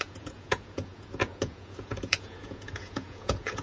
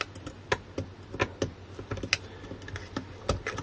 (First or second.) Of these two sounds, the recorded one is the second